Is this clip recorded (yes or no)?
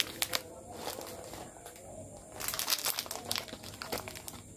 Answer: yes